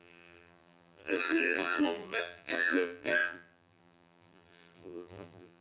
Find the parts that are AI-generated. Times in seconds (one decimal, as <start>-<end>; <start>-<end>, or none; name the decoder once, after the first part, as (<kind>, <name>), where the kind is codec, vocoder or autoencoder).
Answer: 0.0-5.6 (vocoder, BigVGAN v2)

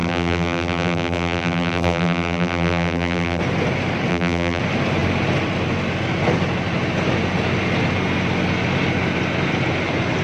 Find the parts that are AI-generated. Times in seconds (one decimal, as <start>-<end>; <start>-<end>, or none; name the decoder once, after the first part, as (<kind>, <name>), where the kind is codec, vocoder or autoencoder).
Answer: 0.0-3.4 (vocoder, BigVGAN v2); 4.1-4.6

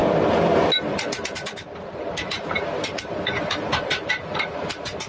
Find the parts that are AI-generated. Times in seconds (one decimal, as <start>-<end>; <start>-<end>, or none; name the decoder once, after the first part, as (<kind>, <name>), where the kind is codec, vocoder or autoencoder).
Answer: 0.0-3.1 (vocoder, BigVGAN v2)

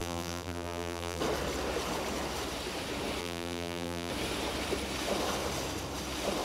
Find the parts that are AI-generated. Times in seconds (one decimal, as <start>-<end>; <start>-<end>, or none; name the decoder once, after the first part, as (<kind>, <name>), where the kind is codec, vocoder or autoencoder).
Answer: 0.0-1.2 (vocoder, BigVGAN v2); 3.2-4.1

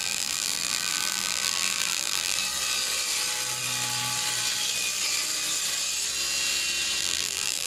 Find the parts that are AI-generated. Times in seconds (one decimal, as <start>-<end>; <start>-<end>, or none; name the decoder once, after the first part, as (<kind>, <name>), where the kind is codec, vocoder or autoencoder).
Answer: 0.0-2.4 (vocoder, BigVGAN v2); 7.0-7.7